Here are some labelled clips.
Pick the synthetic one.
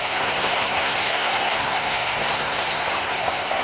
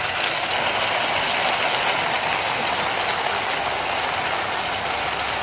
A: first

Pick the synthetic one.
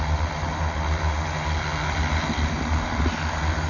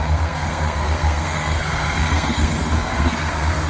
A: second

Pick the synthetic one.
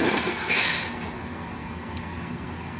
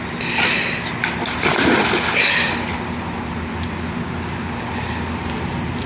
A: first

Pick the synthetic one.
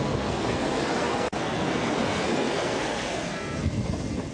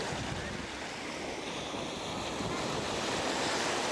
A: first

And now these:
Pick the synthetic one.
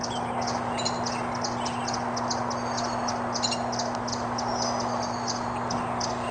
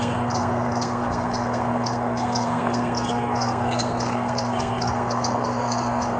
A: second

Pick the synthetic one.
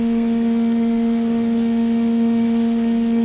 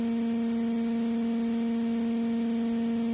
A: first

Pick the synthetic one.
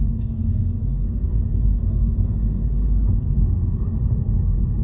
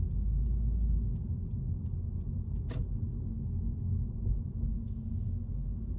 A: first